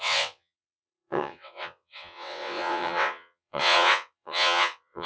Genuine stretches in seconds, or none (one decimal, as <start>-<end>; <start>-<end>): none